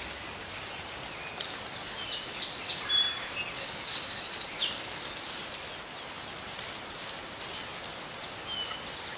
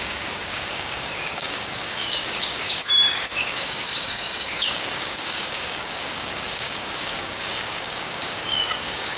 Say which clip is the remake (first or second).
second